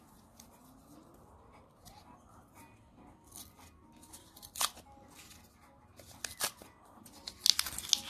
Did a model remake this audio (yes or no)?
no